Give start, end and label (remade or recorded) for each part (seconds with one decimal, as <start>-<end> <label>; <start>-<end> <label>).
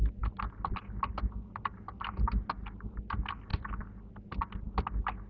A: 0.0-5.3 recorded